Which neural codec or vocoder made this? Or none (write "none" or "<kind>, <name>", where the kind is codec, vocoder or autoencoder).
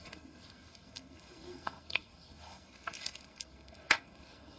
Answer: codec, SNAC